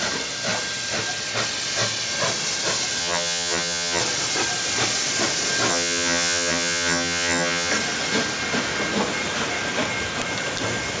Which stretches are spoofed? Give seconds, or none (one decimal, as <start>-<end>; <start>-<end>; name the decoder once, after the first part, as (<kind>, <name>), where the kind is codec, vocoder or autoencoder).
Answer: 3.0-4.0 (vocoder, HiFi-GAN); 5.7-7.7